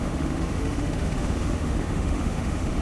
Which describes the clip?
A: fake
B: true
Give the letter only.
A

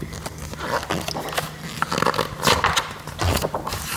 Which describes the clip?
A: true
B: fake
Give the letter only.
A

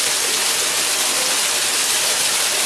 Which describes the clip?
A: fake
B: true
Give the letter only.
B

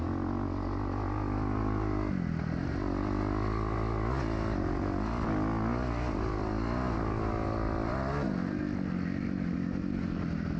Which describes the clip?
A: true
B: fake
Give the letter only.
A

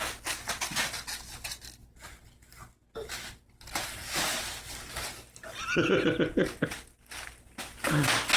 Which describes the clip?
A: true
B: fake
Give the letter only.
A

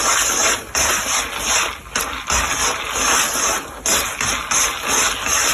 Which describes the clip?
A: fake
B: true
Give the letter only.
B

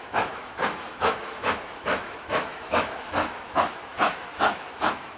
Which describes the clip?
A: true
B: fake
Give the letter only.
B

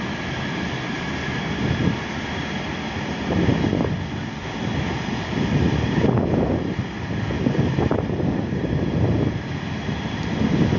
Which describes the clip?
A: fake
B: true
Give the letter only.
B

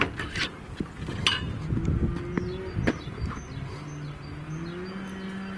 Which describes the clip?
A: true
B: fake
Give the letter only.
A